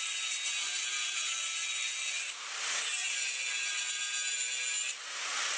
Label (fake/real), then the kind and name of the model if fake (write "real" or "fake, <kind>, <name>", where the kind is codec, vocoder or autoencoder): real